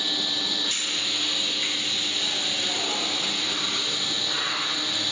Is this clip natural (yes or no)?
yes